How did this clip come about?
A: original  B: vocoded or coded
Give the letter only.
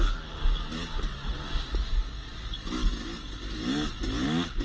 A